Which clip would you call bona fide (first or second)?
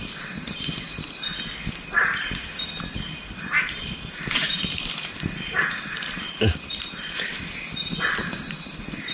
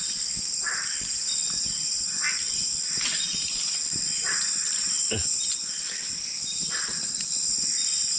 second